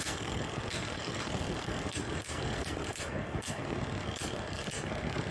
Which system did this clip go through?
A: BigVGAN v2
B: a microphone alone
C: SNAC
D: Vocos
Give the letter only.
C